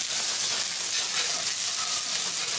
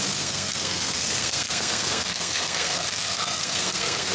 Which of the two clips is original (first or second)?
first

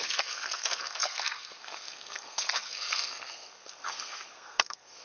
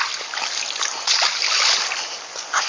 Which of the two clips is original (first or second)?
second